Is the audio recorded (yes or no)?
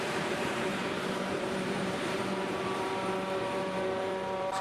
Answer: no